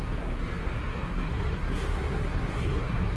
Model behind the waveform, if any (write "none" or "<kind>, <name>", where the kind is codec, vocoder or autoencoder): codec, SNAC